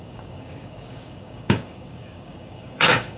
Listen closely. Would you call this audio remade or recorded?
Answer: remade